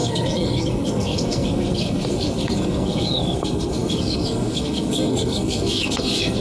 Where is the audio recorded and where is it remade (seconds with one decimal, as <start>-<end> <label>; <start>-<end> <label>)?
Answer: 0.0-6.4 remade